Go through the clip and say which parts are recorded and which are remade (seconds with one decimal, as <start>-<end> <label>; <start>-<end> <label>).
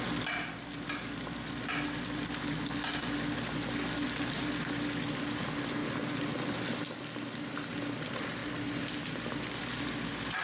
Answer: 0.0-10.4 recorded